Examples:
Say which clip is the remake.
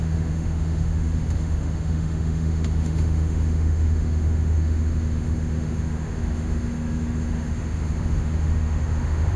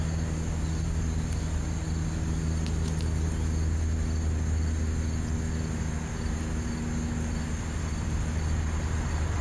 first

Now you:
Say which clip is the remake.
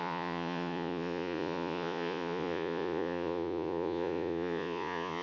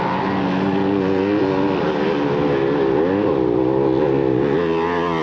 first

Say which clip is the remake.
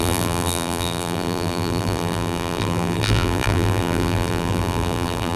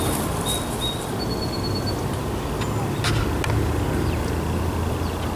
first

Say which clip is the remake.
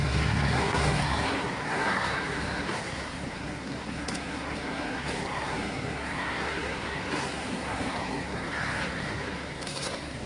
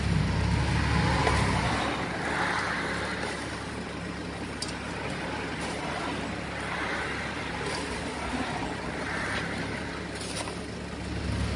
first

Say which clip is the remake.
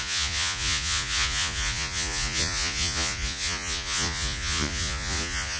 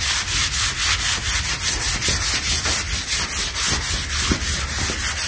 first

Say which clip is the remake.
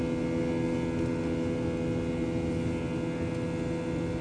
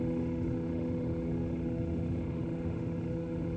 second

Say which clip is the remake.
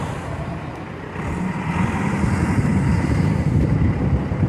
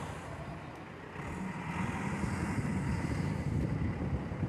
first